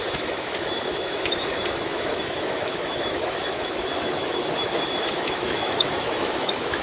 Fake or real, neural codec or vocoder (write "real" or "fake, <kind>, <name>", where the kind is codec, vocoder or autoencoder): fake, autoencoder, DAC-VAE